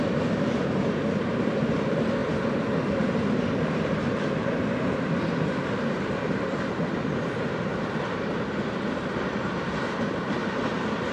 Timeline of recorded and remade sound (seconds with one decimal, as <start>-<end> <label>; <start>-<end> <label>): 0.0-2.2 remade; 2.2-2.9 recorded; 2.9-11.1 remade